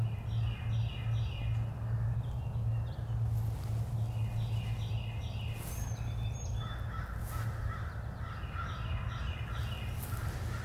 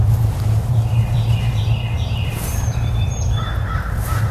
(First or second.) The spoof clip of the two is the second